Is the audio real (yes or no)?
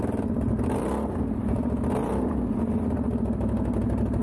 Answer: yes